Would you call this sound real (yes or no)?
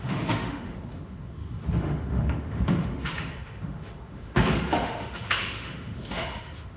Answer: no